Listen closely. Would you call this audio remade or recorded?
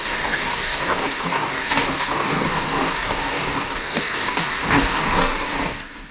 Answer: remade